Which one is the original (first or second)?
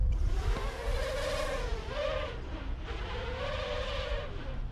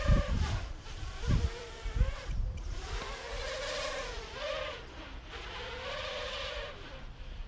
first